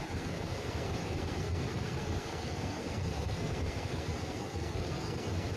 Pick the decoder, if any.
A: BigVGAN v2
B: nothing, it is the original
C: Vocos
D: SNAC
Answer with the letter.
D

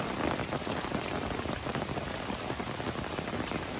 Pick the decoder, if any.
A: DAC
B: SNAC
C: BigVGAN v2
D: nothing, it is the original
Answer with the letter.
D